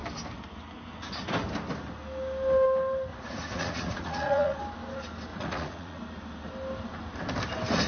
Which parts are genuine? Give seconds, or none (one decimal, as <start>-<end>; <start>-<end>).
0.0-3.1; 4.6-5.3; 6.0-7.9